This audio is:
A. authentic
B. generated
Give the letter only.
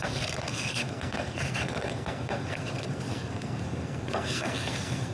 B